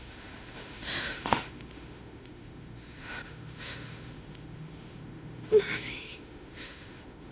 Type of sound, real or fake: fake